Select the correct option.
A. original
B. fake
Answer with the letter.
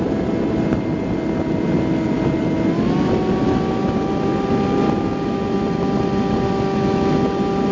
A